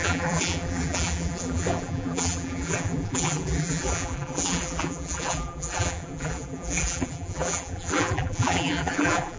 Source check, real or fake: fake